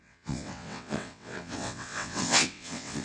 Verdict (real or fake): fake